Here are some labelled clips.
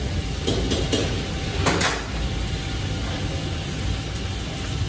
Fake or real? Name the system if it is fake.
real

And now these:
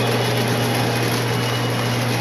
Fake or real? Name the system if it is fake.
real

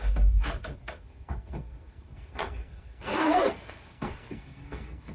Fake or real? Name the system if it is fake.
fake, codec, SNAC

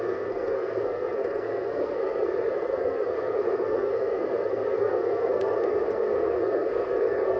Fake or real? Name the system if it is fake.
fake, codec, SNAC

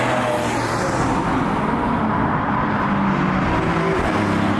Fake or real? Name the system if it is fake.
real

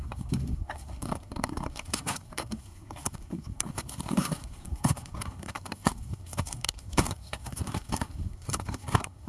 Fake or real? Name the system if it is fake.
fake, codec, SNAC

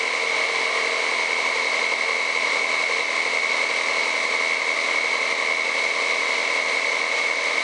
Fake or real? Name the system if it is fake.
real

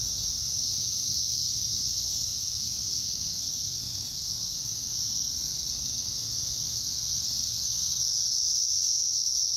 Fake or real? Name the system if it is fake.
fake, codec, SNAC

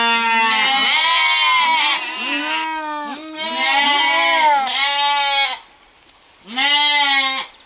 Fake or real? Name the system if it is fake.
real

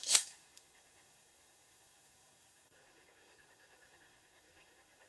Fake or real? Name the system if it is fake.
fake, codec, SNAC